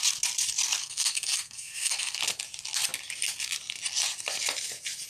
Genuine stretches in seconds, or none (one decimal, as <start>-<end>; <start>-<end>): 0.0-0.8; 2.2-5.1

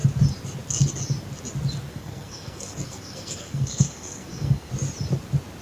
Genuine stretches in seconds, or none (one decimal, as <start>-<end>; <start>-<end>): 0.0-1.9; 4.7-5.6

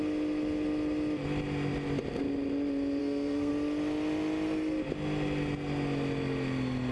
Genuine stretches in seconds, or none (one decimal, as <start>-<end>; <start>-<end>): 0.0-3.0; 3.5-6.9

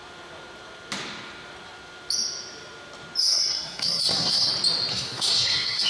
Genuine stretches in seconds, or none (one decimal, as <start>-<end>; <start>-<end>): 0.0-3.2; 4.5-4.9